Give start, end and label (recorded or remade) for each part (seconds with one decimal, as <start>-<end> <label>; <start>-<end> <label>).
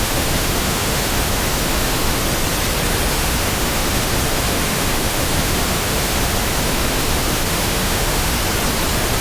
0.0-2.2 remade; 2.2-3.1 recorded; 3.1-8.4 remade; 8.4-9.2 recorded